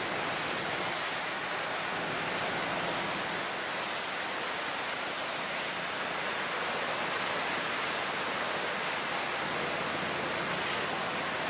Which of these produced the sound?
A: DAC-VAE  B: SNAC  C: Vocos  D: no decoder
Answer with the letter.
D